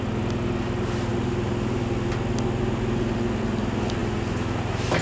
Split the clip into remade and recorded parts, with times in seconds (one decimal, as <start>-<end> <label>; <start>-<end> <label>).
0.0-5.0 recorded